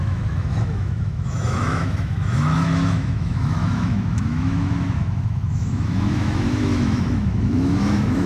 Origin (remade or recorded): remade